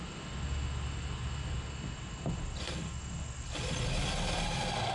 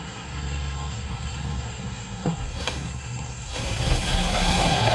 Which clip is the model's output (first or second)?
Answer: second